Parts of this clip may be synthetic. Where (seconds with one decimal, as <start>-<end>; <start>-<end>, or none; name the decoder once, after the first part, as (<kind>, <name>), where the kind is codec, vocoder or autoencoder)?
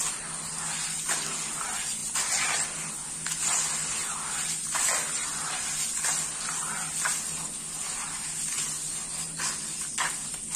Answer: none